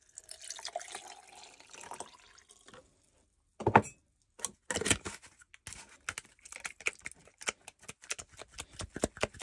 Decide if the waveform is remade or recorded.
recorded